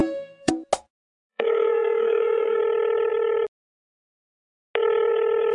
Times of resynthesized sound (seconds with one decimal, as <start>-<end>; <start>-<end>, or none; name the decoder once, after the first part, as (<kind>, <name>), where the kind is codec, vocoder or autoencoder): 0.0-0.5 (codec, SNAC); 1.3-2.6